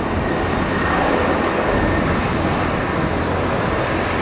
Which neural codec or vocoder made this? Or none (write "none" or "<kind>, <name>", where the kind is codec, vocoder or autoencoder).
none